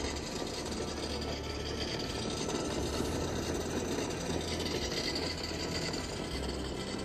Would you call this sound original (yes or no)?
yes